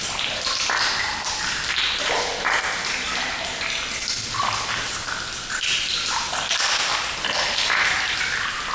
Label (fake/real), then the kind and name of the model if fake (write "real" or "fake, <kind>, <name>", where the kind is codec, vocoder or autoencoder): real